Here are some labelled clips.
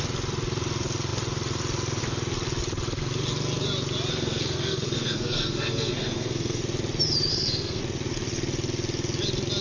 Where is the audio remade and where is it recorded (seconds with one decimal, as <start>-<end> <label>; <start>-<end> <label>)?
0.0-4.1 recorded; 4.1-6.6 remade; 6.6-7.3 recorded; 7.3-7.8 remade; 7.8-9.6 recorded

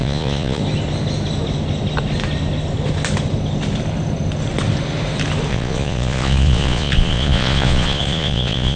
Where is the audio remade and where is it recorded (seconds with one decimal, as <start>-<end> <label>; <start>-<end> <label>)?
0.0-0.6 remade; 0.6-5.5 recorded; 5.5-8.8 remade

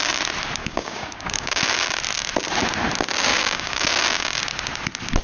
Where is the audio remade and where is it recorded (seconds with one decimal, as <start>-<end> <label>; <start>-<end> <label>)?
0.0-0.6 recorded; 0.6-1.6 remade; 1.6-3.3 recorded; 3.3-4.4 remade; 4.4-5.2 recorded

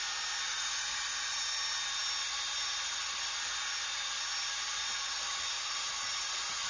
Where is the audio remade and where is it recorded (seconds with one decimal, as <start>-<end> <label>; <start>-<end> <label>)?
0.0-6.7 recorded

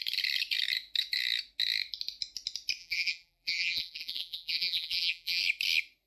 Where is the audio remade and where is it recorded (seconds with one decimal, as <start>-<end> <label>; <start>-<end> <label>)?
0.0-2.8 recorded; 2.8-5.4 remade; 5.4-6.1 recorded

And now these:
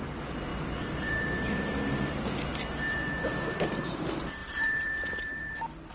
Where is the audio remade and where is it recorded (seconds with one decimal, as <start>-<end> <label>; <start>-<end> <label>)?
0.0-0.5 recorded; 0.5-4.0 remade; 4.0-4.4 recorded; 4.4-5.5 remade; 5.5-5.9 recorded